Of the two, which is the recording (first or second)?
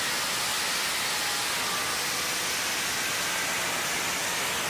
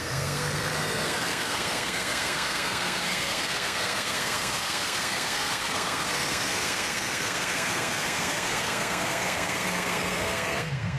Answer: first